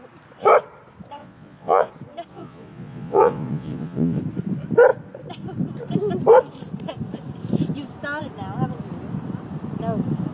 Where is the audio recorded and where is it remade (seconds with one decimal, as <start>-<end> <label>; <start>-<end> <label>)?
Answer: 0.0-1.2 recorded; 1.2-1.9 remade; 1.9-2.3 recorded; 2.3-4.2 remade; 4.2-10.3 recorded